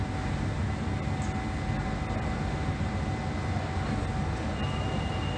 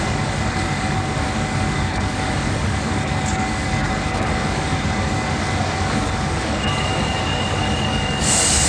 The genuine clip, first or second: first